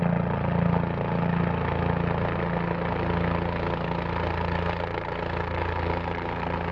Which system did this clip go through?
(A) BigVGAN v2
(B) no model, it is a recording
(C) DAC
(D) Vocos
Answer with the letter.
B